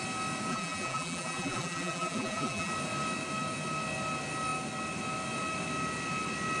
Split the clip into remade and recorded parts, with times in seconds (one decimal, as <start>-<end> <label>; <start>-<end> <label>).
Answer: 0.0-0.5 recorded; 0.5-2.7 remade; 2.7-6.6 recorded